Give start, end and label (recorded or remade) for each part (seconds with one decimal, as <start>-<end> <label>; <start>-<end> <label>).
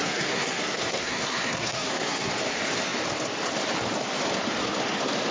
0.0-2.3 remade; 2.3-5.3 recorded